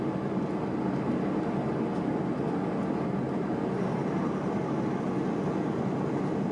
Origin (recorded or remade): recorded